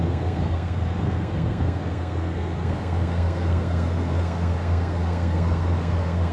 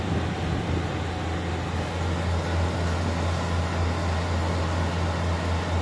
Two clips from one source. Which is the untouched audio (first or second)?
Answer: second